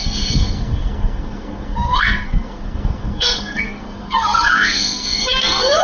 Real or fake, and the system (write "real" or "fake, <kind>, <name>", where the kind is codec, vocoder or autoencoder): fake, codec, SNAC